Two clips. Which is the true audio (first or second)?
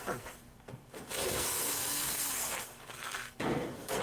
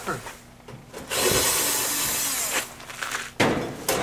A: second